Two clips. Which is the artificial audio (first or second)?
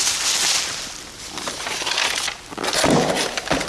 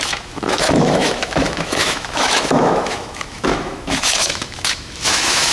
second